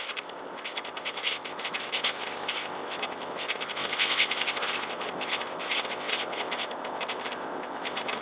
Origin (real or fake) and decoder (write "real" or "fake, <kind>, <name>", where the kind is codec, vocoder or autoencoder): fake, codec, ZipCodec